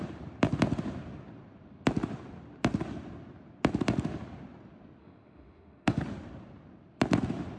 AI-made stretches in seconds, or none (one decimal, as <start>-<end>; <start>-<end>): 5.0-6.0